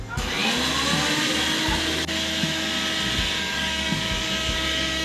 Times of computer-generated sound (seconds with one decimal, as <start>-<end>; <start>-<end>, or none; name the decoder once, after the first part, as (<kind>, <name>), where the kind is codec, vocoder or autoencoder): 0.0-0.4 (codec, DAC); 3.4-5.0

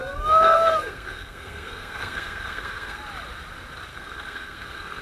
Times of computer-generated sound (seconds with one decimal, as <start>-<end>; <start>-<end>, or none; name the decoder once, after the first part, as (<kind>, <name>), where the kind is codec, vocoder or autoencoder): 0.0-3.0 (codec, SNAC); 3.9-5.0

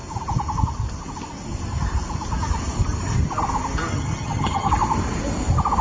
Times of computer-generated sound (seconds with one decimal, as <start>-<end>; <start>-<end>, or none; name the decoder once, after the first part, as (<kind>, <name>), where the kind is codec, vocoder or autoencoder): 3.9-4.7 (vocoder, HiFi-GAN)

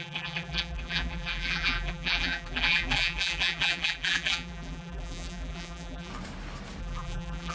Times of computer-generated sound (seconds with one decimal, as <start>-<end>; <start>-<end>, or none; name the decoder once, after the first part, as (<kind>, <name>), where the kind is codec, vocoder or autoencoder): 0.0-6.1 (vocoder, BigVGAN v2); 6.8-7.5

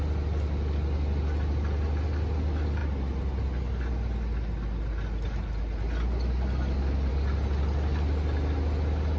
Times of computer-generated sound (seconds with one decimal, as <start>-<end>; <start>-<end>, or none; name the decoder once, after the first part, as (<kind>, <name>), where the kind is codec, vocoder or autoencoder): none

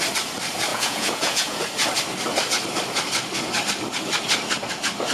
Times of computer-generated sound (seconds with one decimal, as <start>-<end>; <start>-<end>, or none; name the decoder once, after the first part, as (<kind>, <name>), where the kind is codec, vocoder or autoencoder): 0.7-1.7 (vocoder, Vocos)